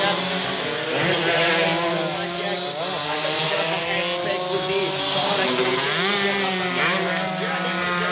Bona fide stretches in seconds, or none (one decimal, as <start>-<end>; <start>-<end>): 0.0-3.0; 3.8-8.1